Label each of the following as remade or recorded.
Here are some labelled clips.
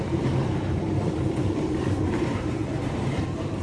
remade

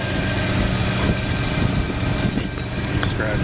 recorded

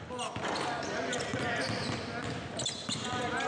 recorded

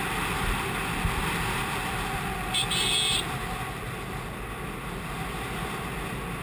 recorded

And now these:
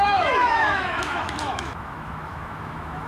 remade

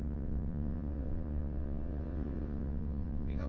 remade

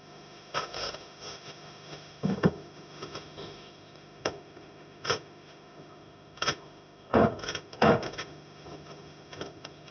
remade